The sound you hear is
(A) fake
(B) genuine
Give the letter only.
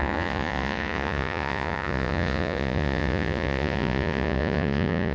A